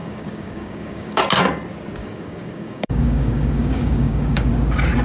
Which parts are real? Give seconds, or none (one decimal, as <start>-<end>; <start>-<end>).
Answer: 1.2-2.0; 4.5-5.0